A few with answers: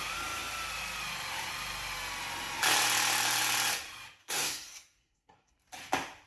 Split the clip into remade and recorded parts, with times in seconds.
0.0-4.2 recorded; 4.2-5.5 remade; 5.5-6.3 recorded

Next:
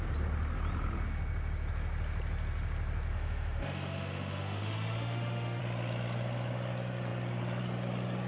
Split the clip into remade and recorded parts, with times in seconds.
0.0-3.1 recorded; 3.1-5.6 remade; 5.6-8.3 recorded

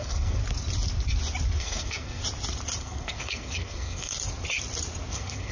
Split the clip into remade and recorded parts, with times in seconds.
0.0-0.4 remade; 0.4-1.6 recorded; 1.6-2.2 remade; 2.2-2.8 recorded; 2.8-4.1 remade; 4.1-5.1 recorded; 5.1-5.5 remade